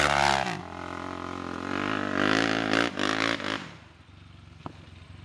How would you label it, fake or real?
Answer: real